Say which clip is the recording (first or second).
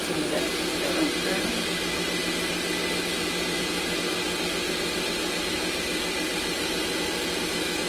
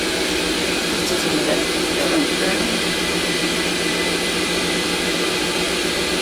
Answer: first